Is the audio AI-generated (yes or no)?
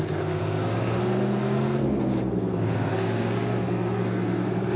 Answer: yes